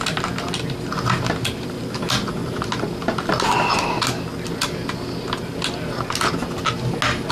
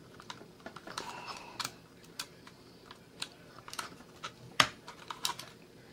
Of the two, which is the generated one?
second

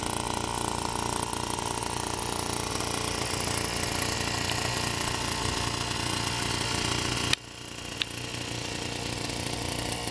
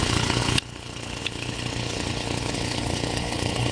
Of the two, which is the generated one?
second